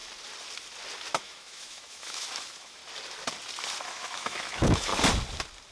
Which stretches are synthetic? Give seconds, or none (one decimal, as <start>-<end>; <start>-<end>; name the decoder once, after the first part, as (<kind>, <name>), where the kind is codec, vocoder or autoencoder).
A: 1.2-2.8 (autoencoder, DAC-VAE); 3.9-4.9